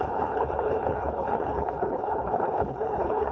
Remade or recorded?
remade